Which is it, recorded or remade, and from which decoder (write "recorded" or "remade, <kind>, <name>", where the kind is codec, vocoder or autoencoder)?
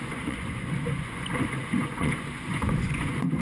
remade, vocoder, Vocos